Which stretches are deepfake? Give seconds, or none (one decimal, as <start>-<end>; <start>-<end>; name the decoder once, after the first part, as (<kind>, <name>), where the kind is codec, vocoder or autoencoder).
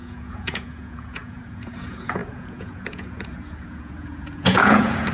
0.0-5.1 (vocoder, Vocos)